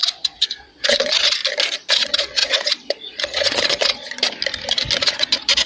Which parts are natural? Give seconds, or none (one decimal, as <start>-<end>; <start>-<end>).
1.4-1.9; 4.2-5.0